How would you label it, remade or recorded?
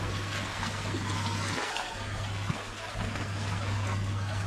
remade